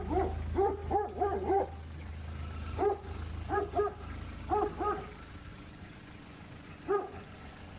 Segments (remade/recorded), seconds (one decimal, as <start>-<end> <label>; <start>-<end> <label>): 0.0-5.5 recorded; 5.5-7.8 remade